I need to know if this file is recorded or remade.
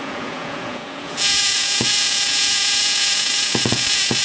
remade